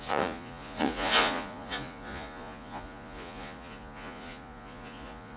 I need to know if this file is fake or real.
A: fake